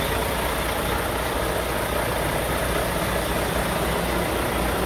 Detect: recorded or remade recorded